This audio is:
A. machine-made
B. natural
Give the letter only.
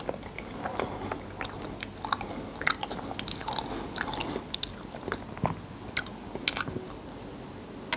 B